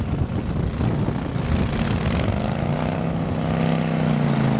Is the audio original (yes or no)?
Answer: yes